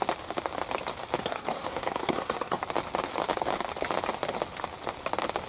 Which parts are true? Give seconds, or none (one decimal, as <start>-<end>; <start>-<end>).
0.0-1.2; 2.6-5.5